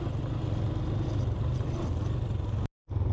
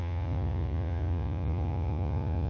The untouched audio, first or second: first